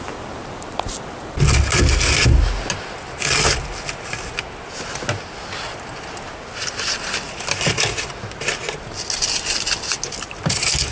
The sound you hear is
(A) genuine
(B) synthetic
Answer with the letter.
A